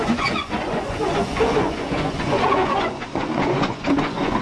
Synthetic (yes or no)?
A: yes